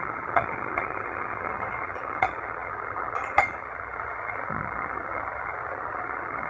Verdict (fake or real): fake